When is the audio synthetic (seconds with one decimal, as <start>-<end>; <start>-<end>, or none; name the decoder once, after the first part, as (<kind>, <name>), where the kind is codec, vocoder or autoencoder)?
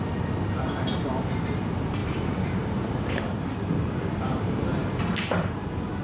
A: 2.0-5.0 (vocoder, BigVGAN v2)